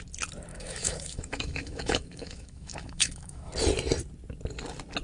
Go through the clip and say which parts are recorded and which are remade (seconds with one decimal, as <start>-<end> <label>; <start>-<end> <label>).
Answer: 0.0-0.5 recorded; 0.5-3.5 remade; 3.5-5.0 recorded